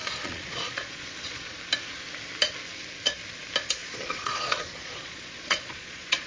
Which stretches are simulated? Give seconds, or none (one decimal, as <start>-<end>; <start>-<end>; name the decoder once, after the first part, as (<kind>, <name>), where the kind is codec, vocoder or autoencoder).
0.0-1.6 (vocoder, Vocos); 3.8-6.3